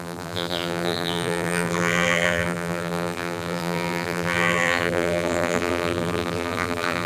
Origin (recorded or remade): remade